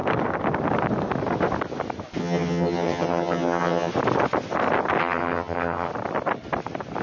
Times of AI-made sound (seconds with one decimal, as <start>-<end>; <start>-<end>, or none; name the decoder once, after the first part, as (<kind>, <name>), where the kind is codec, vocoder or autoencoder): 2.2-3.9 (vocoder, HiFi-GAN); 5.0-5.9